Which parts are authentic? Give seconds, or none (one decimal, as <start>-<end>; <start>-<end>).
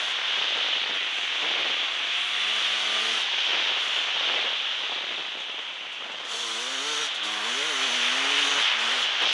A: 0.0-9.3